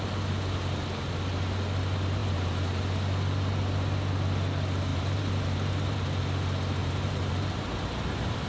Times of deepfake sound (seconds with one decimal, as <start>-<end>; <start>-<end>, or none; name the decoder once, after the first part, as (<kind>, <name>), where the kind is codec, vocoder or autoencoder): 2.2-2.8 (vocoder, BigVGAN v2); 4.9-6.2; 6.8-7.5

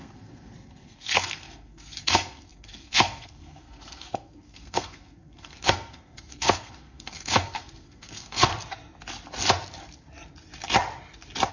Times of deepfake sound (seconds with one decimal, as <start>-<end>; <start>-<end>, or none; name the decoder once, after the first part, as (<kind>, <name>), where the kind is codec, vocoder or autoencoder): 0.0-8.5 (codec, SNAC)

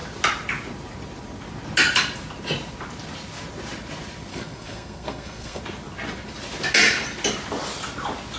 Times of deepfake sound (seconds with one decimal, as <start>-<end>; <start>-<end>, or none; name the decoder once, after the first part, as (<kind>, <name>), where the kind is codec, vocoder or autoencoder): 4.3-5.6 (codec, SNAC)

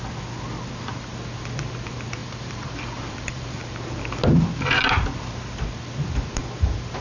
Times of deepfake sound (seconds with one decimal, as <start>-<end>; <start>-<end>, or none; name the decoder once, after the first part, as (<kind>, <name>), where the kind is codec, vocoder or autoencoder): 2.2-3.6 (vocoder, BigVGAN v2)